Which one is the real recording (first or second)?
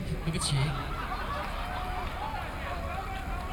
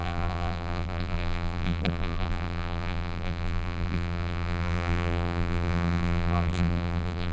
first